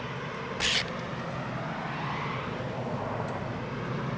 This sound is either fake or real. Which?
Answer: real